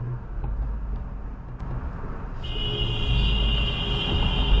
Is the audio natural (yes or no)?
yes